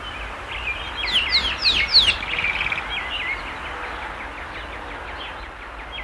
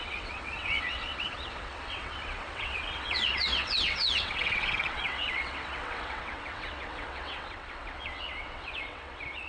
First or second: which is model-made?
second